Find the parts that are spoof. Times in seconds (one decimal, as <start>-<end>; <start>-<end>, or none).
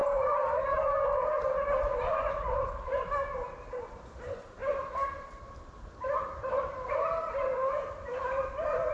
0.0-0.8; 1.9-2.6; 4.6-8.9